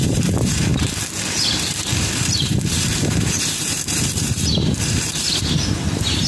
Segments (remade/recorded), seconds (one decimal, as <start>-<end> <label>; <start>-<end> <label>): 0.0-0.7 remade; 0.7-1.3 recorded; 1.3-6.3 remade